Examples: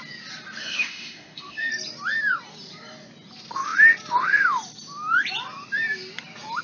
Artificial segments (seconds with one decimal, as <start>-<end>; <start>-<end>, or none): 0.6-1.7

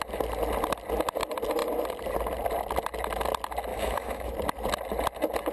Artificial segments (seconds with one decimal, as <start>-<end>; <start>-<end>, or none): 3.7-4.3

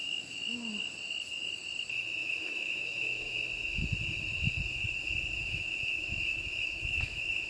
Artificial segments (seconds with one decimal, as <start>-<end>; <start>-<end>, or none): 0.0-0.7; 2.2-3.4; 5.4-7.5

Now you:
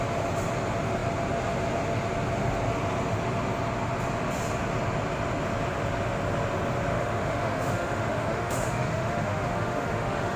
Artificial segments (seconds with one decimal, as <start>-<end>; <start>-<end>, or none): 6.9-10.4

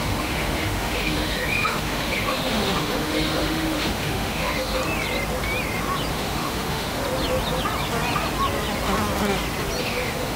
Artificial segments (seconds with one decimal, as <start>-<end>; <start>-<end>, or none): 0.0-4.8; 6.1-7.0; 9.8-10.4

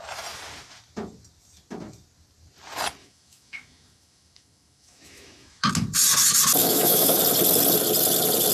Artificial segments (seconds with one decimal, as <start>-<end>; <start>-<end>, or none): 3.0-5.7; 6.6-7.2

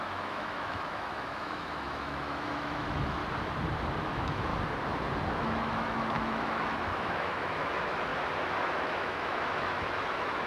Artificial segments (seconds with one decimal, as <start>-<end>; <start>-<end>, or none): 0.0-3.2; 4.1-4.5; 5.3-8.1; 8.6-10.5